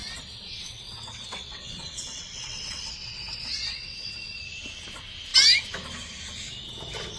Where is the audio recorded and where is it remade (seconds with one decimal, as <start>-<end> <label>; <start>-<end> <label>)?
0.0-4.1 remade; 4.1-7.2 recorded